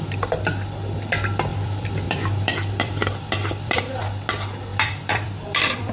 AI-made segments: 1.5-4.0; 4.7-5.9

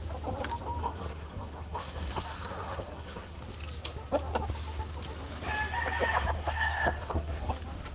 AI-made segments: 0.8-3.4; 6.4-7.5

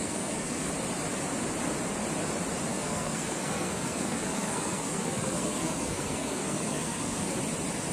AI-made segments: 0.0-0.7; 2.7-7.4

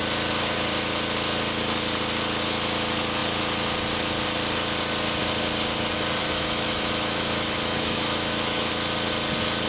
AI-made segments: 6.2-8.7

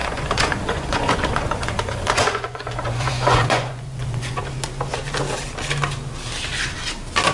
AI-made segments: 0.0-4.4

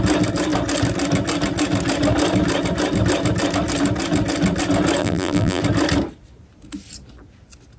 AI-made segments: 5.0-5.6

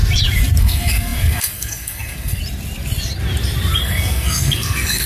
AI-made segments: 0.6-2.4; 3.8-5.1

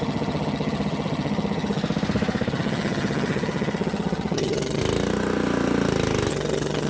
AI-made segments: 0.0-1.8; 2.5-4.8; 6.3-6.9